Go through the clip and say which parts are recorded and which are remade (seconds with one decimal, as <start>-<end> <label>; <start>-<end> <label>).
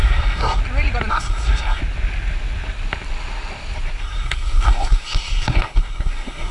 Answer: 0.0-0.6 remade; 0.6-1.1 recorded; 1.1-1.8 remade; 1.8-4.0 recorded; 4.0-6.5 remade